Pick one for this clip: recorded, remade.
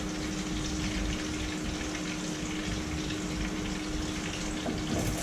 recorded